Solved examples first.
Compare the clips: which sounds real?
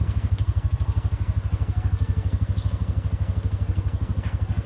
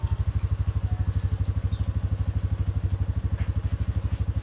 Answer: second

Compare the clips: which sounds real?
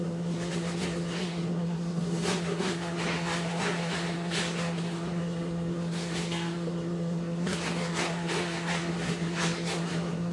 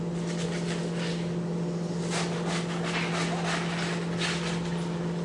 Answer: second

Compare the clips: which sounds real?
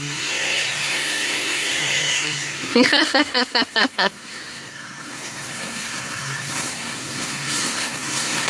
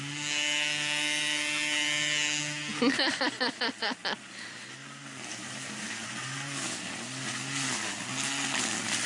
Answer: second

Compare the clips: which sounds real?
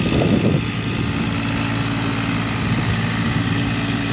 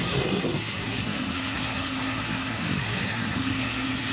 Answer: first